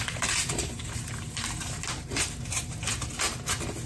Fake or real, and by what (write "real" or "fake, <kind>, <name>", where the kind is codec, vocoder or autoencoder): fake, vocoder, BigVGAN v2